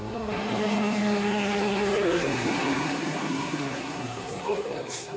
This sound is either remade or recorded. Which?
remade